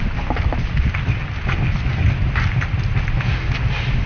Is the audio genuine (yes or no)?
yes